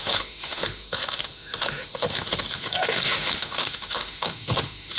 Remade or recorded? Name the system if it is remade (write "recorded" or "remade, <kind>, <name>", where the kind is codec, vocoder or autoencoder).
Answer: remade, autoencoder, DAC-VAE